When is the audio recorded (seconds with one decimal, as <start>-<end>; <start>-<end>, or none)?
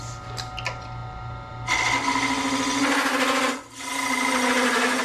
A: 0.0-5.0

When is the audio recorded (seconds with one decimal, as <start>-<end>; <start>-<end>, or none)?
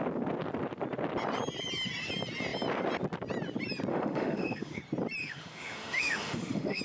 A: 0.0-3.9; 4.8-5.2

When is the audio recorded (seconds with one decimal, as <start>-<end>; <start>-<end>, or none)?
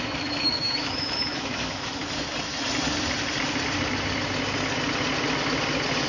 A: 2.0-6.1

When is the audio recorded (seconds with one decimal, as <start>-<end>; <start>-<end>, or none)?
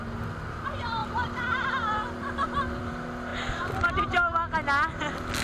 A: 0.0-1.0; 2.9-5.4